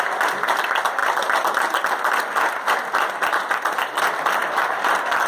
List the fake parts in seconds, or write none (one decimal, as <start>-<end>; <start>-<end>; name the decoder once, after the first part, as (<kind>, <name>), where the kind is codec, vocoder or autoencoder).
4.4-5.3 (vocoder, BigVGAN v2)